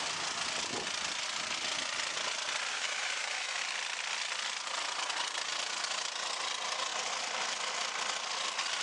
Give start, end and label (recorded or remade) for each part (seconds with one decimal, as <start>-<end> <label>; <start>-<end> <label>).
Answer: 0.0-2.7 recorded; 2.7-3.6 remade; 3.6-8.8 recorded